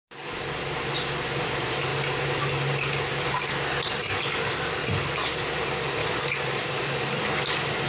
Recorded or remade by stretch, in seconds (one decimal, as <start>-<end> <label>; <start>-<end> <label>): 0.0-6.0 recorded; 6.0-7.1 remade; 7.1-7.9 recorded